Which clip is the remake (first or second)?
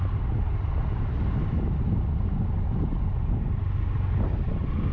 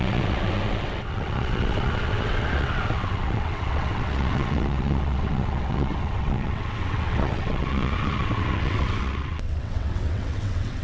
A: second